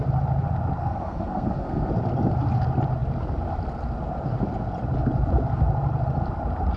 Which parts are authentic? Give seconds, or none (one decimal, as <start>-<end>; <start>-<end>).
0.0-0.8; 1.9-6.8